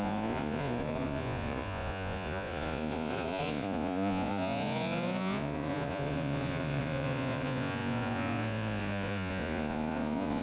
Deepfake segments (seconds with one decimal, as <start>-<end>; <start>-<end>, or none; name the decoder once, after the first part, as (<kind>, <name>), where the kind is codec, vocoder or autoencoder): 0.0-10.4 (vocoder, Vocos)